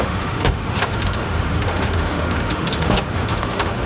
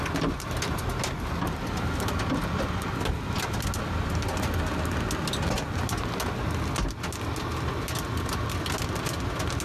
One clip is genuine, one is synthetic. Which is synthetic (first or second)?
first